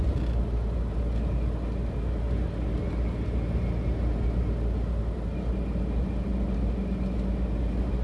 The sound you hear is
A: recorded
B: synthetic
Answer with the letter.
A